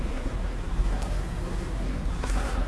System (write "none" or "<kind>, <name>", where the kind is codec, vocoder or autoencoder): codec, SNAC